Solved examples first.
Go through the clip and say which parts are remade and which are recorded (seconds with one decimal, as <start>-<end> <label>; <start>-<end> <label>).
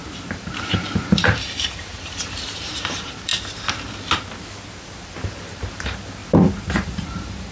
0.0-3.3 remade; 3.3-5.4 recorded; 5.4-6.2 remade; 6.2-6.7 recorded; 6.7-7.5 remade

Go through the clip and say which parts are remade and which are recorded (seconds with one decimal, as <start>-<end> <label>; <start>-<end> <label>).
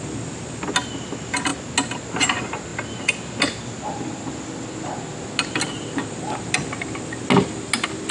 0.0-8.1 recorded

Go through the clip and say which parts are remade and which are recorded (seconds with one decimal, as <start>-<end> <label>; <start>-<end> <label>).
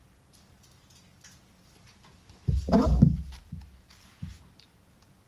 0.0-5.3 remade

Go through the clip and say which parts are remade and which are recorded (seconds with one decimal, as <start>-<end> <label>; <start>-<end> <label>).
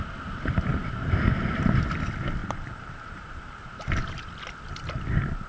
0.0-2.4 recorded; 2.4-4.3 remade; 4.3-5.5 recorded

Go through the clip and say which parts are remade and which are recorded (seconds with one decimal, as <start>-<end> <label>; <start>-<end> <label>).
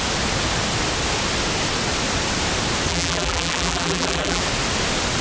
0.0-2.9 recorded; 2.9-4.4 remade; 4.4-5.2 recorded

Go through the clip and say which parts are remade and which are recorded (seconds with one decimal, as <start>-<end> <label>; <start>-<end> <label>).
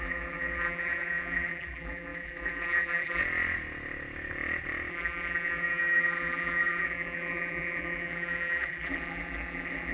0.0-3.2 remade; 3.2-4.9 recorded; 4.9-9.9 remade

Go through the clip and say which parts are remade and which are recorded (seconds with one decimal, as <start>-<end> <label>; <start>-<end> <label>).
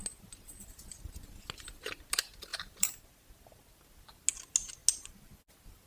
0.0-2.5 recorded; 2.5-3.0 remade; 3.0-5.9 recorded